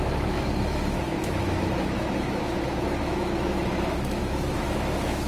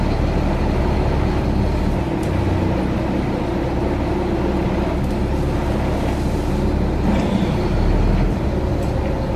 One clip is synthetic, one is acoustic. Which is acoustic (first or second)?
second